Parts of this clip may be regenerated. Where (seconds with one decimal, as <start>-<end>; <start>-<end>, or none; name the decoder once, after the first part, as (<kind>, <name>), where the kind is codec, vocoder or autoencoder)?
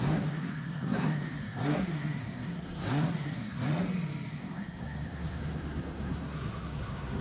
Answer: 0.0-3.7 (codec, SNAC); 4.3-7.2